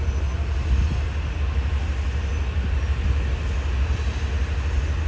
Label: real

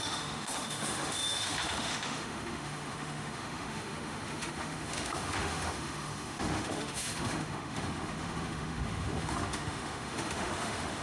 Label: fake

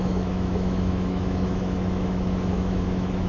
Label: fake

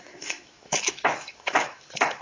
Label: fake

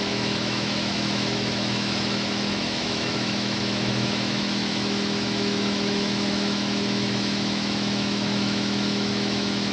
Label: fake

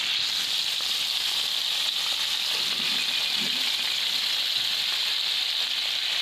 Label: real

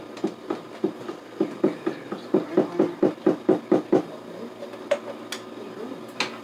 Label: real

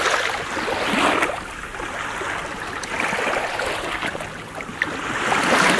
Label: real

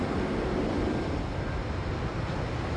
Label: real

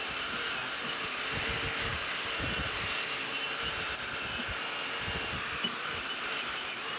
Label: real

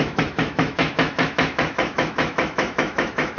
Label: fake